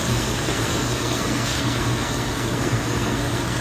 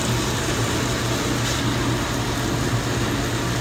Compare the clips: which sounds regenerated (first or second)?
first